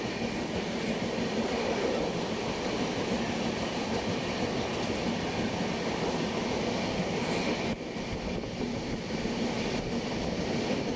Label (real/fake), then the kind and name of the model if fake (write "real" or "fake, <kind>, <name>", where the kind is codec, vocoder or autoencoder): real